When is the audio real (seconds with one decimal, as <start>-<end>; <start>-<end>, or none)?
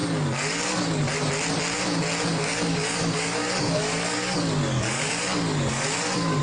1.1-2.3